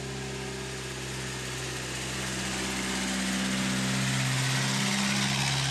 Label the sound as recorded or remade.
recorded